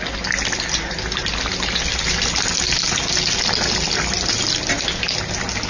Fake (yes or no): no